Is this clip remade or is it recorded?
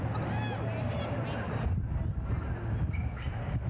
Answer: recorded